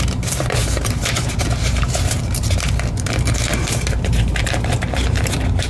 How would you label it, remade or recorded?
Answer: remade